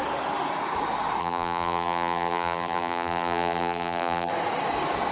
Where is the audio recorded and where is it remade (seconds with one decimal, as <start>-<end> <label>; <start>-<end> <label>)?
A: 0.0-1.2 recorded; 1.2-4.3 remade; 4.3-5.1 recorded